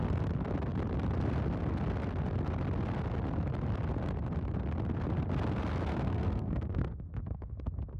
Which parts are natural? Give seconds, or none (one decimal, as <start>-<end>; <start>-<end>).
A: 0.0-5.9; 7.6-8.0